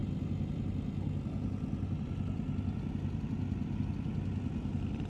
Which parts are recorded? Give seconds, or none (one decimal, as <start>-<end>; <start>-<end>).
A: 0.0-5.1